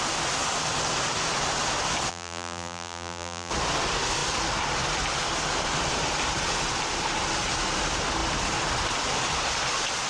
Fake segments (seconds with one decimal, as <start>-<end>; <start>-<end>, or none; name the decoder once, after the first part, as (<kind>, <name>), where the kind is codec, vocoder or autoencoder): 2.1-3.5 (vocoder, BigVGAN v2)